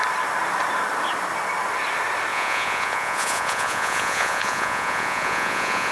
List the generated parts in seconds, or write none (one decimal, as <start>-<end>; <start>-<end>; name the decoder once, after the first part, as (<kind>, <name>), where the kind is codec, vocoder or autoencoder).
2.3-5.9 (vocoder, Vocos)